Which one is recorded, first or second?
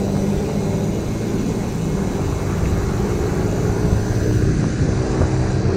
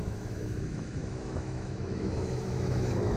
first